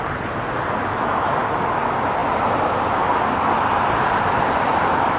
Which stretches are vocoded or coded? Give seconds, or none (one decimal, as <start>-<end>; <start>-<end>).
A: 0.8-1.3